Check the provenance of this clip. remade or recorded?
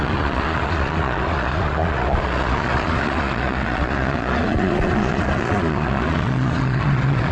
remade